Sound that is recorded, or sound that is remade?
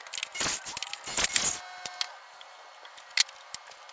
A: recorded